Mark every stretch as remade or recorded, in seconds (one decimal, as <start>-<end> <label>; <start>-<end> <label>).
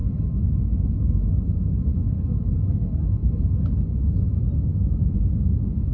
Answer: 0.0-2.1 remade; 2.1-4.7 recorded; 4.7-5.5 remade; 5.5-5.9 recorded